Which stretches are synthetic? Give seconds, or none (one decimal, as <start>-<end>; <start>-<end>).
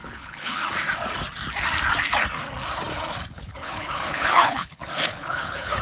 0.0-0.6; 3.3-5.8